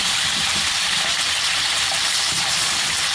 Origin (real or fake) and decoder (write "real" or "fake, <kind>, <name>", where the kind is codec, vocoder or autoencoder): fake, vocoder, BigVGAN v2